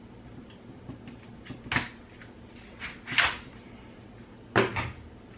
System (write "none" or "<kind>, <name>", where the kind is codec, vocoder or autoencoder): none